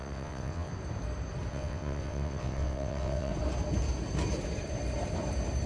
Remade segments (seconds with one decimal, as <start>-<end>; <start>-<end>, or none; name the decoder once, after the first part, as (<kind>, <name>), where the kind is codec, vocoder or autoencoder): 0.0-0.7 (vocoder, WaveNeXt); 1.5-3.3